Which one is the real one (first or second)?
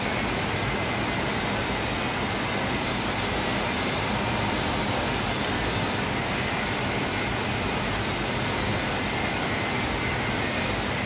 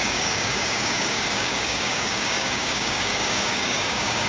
first